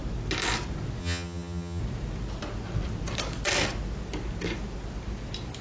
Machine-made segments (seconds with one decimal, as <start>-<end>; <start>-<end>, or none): 1.0-1.8